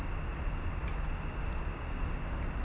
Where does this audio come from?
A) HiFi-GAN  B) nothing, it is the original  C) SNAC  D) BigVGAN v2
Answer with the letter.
B